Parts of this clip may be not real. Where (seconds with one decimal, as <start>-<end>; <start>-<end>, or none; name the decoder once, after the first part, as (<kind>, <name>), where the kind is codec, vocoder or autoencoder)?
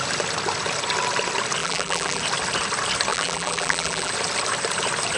1.6-2.2 (vocoder, BigVGAN v2); 3.1-4.1